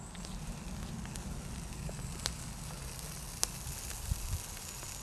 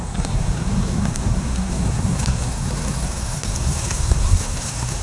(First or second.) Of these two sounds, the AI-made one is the second